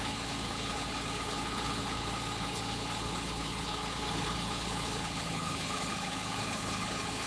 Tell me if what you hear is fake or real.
fake